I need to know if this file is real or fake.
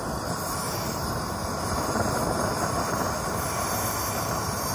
real